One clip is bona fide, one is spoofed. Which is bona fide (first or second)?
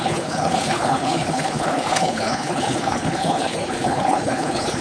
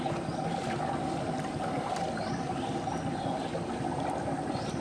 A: second